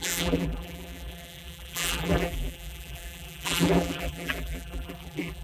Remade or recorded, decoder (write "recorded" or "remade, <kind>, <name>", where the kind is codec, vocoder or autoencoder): remade, vocoder, BigVGAN v2